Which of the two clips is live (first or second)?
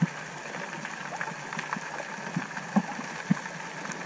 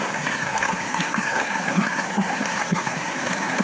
first